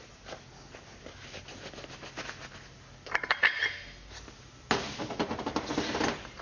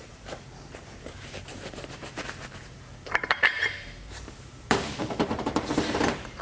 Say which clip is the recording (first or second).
first